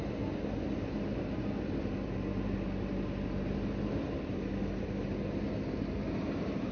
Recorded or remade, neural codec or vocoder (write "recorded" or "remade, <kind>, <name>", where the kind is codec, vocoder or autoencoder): recorded